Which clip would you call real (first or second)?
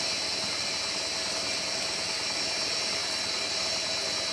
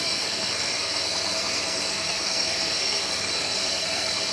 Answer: first